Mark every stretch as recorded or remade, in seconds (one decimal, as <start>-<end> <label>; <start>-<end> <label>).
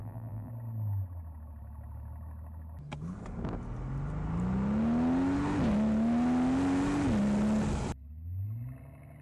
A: 0.0-0.5 remade; 0.5-9.2 recorded